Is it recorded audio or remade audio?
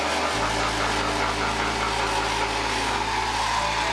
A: recorded